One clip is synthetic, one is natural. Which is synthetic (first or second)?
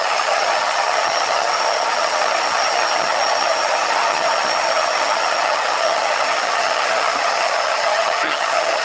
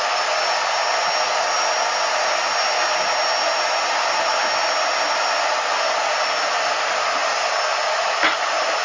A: first